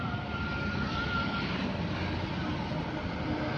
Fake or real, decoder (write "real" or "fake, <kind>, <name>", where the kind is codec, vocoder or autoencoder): real